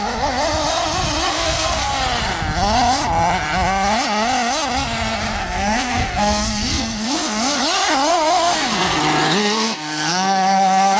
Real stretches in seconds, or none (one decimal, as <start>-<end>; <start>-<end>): 0.0-1.3; 1.9-5.4; 7.6-8.1; 9.0-9.4